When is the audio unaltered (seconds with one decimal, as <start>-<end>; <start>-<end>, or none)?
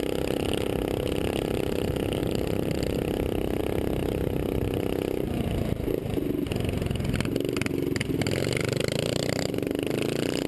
0.0-4.0; 6.5-10.5